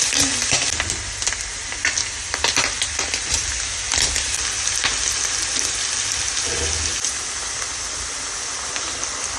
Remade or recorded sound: recorded